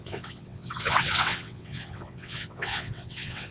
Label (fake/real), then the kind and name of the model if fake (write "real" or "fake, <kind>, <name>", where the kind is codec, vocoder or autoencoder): fake, vocoder, WaveNeXt